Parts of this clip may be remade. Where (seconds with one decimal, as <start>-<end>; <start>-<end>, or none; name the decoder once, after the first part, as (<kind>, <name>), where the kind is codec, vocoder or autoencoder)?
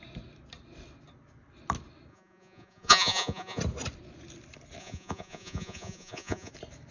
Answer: 2.1-3.6 (vocoder, Vocos); 4.8-6.5